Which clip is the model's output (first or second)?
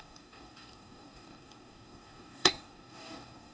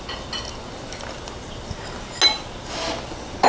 first